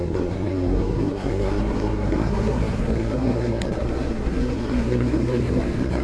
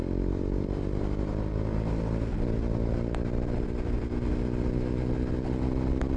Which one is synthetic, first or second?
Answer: first